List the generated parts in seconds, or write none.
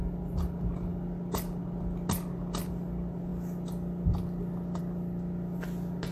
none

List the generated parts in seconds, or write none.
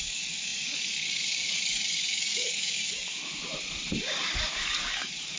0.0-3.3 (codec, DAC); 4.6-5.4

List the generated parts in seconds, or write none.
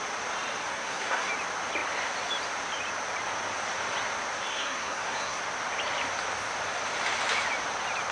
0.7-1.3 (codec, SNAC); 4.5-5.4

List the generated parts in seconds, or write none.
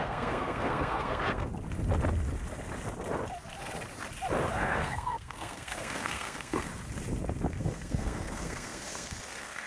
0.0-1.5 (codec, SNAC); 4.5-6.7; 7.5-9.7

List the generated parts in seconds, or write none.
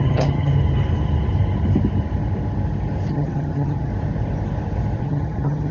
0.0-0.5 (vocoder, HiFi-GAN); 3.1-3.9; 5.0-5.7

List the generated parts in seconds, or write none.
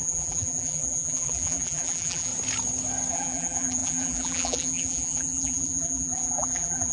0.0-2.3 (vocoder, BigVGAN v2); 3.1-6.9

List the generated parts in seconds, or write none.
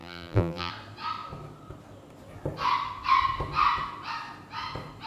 0.0-0.7 (vocoder, BigVGAN v2)